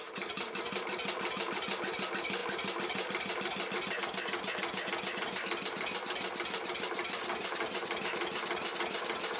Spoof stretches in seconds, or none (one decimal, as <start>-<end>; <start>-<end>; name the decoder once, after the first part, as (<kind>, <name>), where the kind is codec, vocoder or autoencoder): none